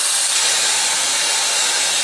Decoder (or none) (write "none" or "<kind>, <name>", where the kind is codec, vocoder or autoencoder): none